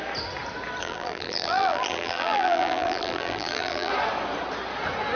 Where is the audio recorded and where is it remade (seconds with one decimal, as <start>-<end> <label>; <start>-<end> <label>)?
0.0-0.8 recorded; 0.8-3.9 remade; 3.9-5.2 recorded